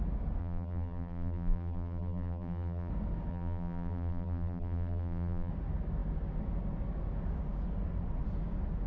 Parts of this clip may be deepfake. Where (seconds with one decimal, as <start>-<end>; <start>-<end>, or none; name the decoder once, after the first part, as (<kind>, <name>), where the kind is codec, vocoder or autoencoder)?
0.4-2.9 (vocoder, BigVGAN v2); 3.3-5.5